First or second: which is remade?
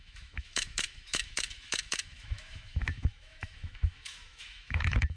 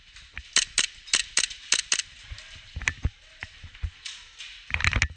first